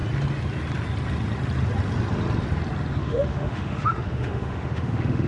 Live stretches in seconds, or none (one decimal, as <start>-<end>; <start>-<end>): 0.0-3.0